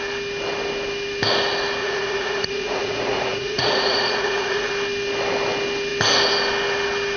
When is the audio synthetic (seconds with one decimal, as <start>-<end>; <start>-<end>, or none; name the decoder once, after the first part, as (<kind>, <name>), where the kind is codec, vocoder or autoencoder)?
1.8-4.7 (vocoder, Vocos)